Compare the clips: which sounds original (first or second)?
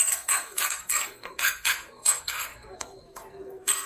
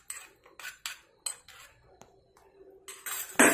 second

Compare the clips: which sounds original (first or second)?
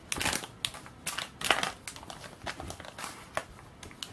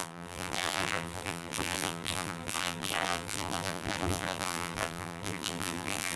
first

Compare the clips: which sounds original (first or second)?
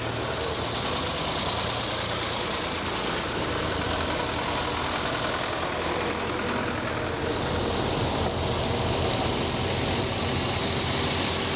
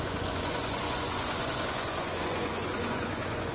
first